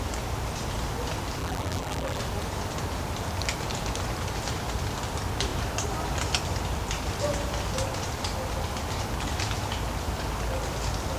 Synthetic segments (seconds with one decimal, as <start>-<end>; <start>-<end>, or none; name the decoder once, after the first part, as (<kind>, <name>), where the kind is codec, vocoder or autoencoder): 1.4-2.2 (vocoder, BigVGAN v2)